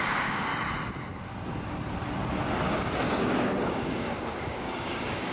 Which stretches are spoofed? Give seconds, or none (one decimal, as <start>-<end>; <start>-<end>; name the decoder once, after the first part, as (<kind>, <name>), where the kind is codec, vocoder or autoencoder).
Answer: 0.0-0.5 (codec, DAC); 3.7-5.3